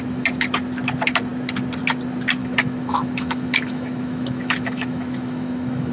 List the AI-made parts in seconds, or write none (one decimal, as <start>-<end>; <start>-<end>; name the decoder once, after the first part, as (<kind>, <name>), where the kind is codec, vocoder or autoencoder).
2.4-5.9 (autoencoder, DAC-VAE)